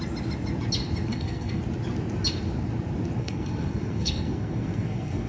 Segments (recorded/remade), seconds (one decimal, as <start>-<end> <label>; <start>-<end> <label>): 0.0-1.1 recorded; 1.1-1.6 remade; 1.6-3.2 recorded; 3.2-5.3 remade